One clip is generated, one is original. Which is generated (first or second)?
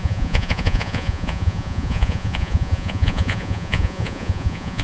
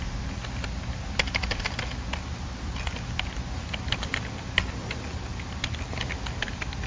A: first